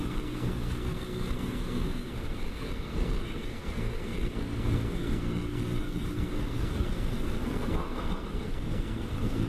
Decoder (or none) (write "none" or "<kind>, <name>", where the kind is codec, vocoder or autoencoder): codec, SNAC